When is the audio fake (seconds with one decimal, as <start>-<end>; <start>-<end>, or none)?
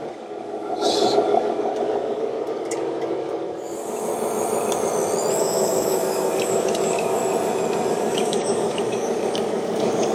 0.0-4.1; 5.4-7.2; 7.9-10.1